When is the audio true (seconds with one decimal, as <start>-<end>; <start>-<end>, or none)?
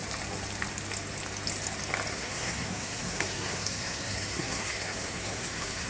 0.0-2.1